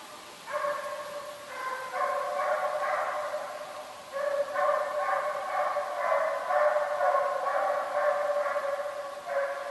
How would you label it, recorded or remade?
recorded